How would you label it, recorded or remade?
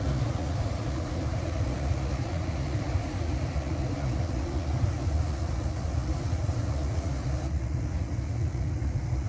remade